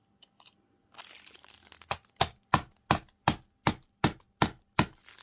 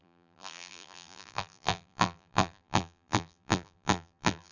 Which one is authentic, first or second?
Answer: first